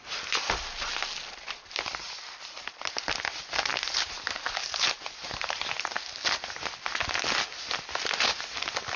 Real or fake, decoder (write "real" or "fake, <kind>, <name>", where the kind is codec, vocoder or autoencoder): real